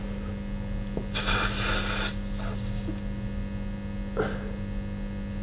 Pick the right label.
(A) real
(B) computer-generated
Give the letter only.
A